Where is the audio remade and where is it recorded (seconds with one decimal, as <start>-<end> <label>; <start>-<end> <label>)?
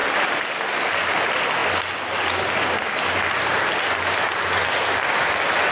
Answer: 0.0-5.7 recorded